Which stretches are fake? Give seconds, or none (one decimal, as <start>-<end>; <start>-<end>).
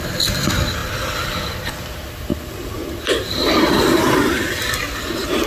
2.3-4.5